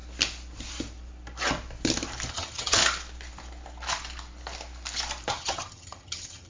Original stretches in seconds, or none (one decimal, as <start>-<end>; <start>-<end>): 0.0-2.3; 2.8-5.3